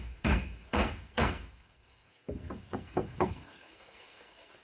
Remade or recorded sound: remade